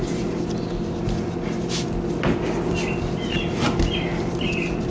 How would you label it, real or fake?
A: real